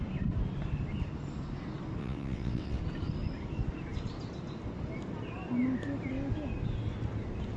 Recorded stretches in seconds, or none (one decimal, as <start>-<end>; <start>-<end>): 0.0-2.0; 2.8-7.6